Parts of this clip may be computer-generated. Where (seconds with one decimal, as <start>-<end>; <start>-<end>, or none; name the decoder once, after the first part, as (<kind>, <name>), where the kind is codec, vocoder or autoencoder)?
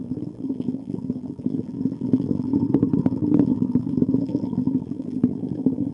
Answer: 0.0-2.5 (vocoder, BigVGAN v2); 3.0-5.9